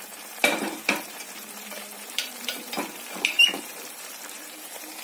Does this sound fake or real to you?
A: fake